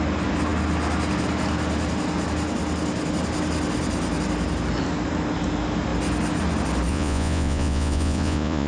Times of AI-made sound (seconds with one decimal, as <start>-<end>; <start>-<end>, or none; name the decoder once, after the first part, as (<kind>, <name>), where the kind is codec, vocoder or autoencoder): 6.9-8.7 (vocoder, Vocos)